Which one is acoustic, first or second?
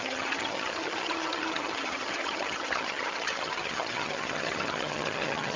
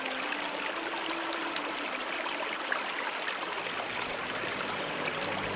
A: second